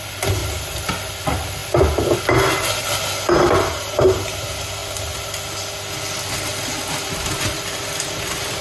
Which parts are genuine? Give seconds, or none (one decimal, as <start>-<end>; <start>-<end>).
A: 0.0-0.4; 1.1-8.6

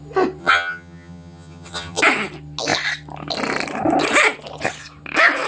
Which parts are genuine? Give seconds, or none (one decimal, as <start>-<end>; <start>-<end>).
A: 0.0-0.4; 2.0-5.5

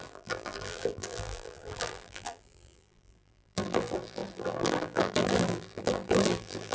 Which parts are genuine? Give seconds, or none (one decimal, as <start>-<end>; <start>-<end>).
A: none

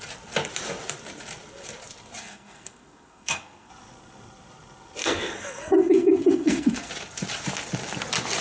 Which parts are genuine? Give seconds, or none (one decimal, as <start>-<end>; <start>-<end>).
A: 0.0-2.2; 3.7-5.0; 6.9-8.4

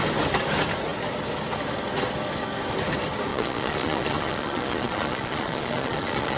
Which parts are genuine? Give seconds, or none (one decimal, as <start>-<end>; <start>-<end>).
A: 0.0-3.3